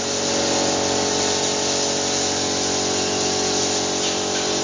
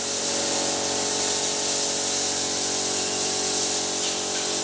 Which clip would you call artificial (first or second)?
second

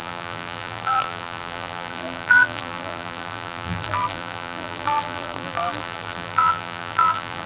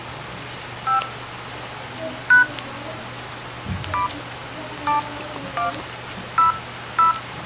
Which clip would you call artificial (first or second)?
first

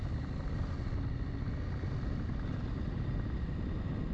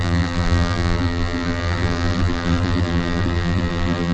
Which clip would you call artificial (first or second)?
second